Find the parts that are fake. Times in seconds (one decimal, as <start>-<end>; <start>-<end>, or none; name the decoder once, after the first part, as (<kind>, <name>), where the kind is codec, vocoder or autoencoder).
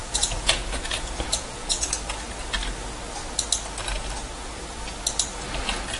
0.0-1.9 (vocoder, Vocos); 4.2-4.8